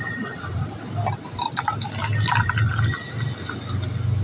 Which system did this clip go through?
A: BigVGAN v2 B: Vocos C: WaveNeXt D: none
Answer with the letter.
D